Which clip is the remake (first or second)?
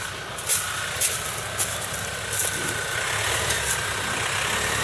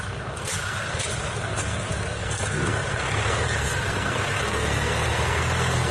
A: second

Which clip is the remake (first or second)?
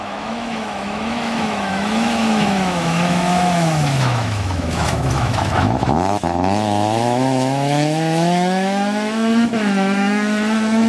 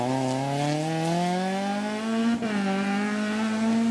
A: first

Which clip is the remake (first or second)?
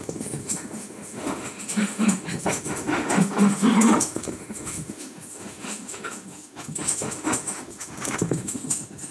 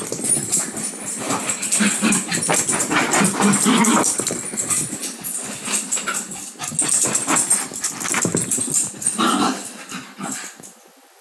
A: first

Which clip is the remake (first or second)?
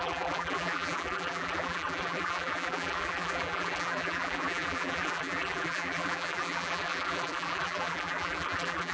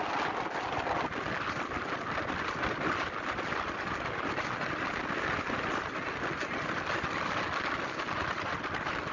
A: first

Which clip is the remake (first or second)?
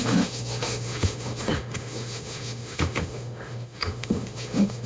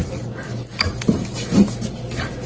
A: first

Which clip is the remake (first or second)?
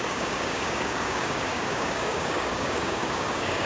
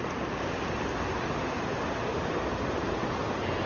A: first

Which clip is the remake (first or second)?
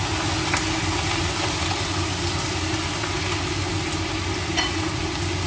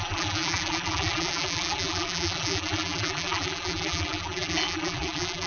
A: second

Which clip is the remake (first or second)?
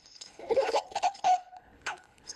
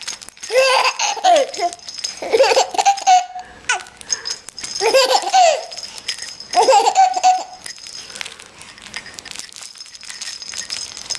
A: first